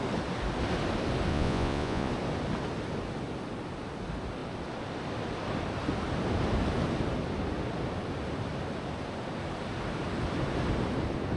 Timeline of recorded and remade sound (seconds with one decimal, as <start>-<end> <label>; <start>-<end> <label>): 0.0-1.3 recorded; 1.3-2.1 remade; 2.1-11.4 recorded